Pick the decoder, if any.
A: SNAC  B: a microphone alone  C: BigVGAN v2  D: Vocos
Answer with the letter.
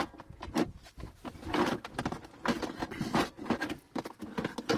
B